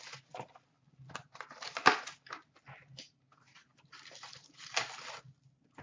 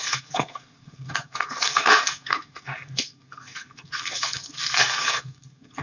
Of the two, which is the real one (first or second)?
first